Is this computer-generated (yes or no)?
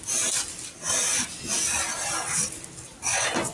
no